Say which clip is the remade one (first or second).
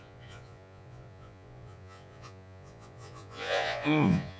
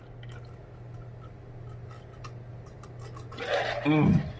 first